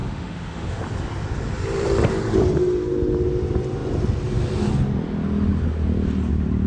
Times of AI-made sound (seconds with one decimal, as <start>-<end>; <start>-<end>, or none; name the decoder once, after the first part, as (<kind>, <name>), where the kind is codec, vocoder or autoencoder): 0.0-0.8 (autoencoder, DAC-VAE)